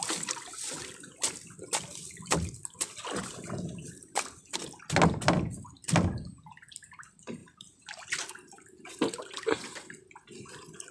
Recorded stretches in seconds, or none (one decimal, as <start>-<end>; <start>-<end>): 0.0-10.9